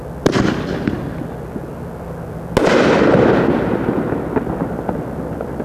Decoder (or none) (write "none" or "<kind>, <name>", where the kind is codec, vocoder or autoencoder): none